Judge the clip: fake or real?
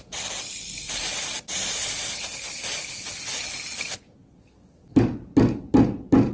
real